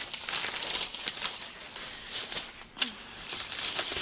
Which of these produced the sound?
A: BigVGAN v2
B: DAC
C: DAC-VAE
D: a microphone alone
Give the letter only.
D